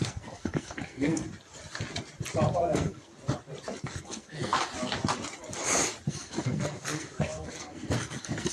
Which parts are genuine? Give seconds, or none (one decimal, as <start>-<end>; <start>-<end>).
1.2-2.5; 3.1-3.8; 4.5-6.1